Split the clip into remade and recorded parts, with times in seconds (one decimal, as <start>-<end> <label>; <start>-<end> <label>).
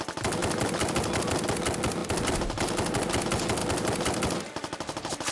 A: 0.0-2.0 recorded; 2.0-2.6 remade; 2.6-5.3 recorded